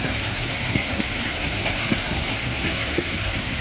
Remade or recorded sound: remade